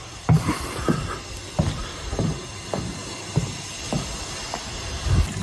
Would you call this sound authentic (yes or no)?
yes